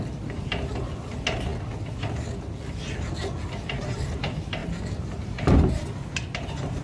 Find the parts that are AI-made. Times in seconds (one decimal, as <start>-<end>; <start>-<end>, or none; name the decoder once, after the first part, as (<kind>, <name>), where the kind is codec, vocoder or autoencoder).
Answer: none